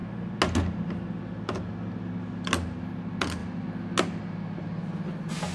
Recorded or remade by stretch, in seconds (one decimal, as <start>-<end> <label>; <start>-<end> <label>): 0.0-5.5 recorded